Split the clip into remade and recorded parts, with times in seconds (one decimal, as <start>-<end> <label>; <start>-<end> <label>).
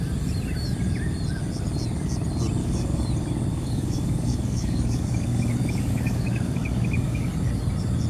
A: 0.0-2.6 recorded; 2.6-3.1 remade; 3.1-3.5 recorded; 3.5-7.3 remade; 7.3-8.1 recorded